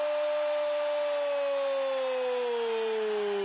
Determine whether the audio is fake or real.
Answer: real